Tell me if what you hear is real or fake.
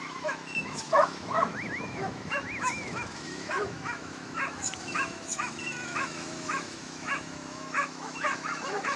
fake